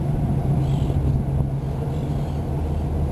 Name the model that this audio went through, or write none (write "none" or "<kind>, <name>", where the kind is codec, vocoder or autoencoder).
none